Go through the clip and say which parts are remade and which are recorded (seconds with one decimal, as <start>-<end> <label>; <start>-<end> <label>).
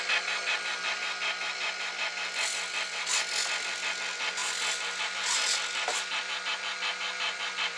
0.0-7.8 recorded